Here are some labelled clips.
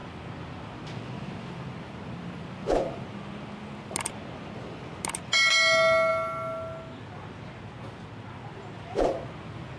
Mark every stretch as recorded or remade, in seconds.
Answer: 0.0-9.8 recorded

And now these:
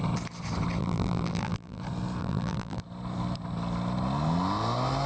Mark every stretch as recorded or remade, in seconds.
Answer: 0.0-0.8 recorded; 0.8-1.8 remade; 1.8-2.2 recorded; 2.2-2.8 remade; 2.8-5.1 recorded

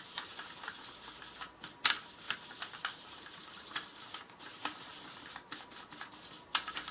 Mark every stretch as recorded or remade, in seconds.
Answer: 0.0-0.4 remade; 0.4-2.5 recorded; 2.5-6.9 remade

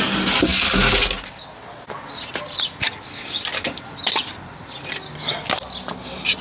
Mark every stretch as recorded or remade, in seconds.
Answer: 0.0-6.4 recorded

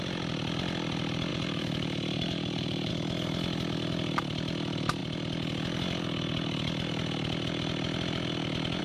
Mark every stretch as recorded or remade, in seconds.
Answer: 0.0-1.3 recorded; 1.3-2.9 remade; 2.9-8.8 recorded

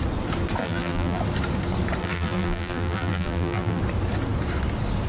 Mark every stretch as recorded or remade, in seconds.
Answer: 0.0-0.6 recorded; 0.6-1.2 remade; 1.2-2.0 recorded; 2.0-3.8 remade; 3.8-5.1 recorded

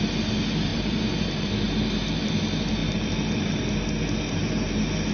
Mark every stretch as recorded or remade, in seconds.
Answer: 0.0-0.7 recorded; 0.7-1.5 remade; 1.5-2.8 recorded; 2.8-3.6 remade; 3.6-5.1 recorded